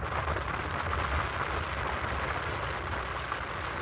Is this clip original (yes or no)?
yes